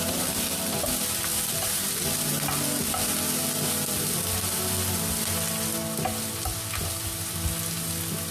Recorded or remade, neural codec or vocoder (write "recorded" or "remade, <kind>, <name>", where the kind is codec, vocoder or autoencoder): recorded